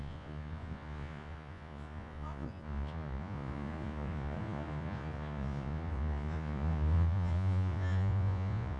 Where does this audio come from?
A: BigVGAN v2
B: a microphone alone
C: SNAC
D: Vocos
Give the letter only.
D